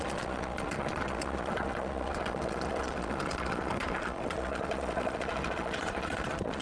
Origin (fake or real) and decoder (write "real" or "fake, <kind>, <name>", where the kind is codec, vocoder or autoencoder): fake, vocoder, Vocos